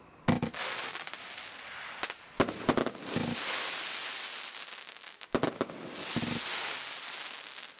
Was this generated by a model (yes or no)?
no